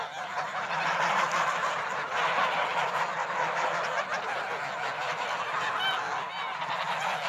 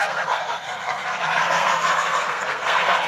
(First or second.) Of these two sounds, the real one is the first